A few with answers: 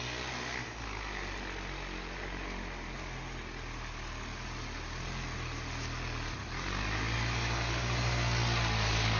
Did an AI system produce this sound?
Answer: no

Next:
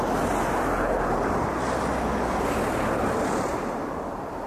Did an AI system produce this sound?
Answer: no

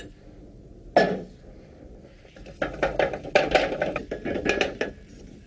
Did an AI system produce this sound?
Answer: no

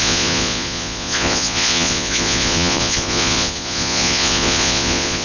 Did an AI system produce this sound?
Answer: yes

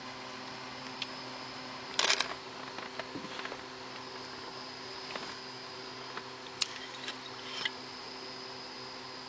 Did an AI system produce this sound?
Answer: no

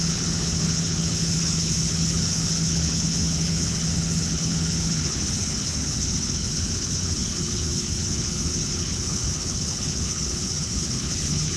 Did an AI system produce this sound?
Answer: yes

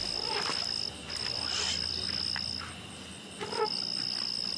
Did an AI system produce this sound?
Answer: no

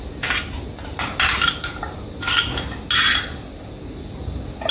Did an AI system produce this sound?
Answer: no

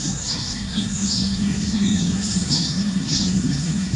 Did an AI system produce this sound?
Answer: yes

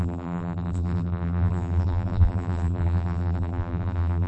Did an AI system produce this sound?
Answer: yes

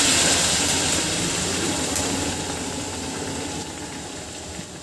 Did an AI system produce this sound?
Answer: yes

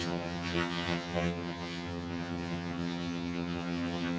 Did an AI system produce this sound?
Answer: yes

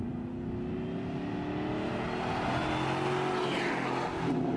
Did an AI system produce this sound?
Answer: no